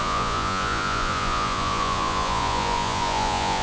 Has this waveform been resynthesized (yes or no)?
yes